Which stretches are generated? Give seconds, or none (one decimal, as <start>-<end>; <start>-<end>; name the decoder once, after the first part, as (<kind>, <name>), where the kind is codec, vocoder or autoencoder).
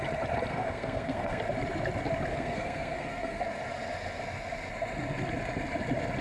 0.5-1.4 (codec, SNAC); 2.3-3.4